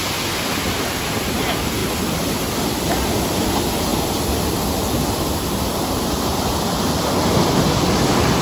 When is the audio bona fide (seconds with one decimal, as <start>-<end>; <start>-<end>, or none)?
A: 0.0-8.4